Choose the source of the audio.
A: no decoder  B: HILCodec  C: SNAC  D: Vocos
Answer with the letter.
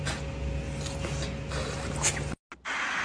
A